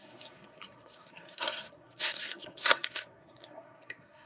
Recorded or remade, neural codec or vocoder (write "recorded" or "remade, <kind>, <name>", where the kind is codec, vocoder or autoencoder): remade, codec, SNAC